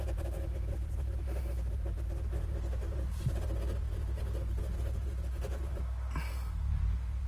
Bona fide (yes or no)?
yes